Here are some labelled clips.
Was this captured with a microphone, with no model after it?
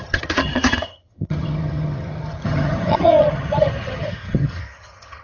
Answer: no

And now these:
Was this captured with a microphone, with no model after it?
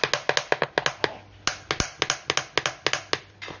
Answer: yes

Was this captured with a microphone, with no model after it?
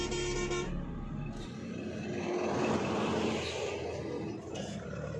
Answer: yes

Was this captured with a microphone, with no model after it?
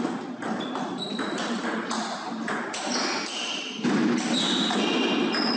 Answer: yes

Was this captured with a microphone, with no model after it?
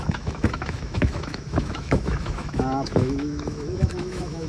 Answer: no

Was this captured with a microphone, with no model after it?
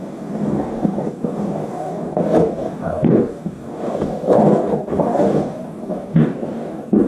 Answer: no